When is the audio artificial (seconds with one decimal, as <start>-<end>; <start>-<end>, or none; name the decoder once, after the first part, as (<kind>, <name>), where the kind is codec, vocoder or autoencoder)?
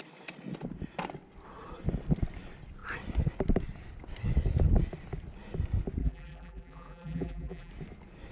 6.0-7.7 (vocoder, BigVGAN v2)